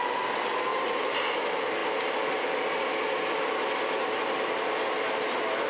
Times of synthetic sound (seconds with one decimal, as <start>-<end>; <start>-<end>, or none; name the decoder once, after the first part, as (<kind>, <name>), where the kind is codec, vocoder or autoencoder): 0.7-1.2 (vocoder, BigVGAN v2)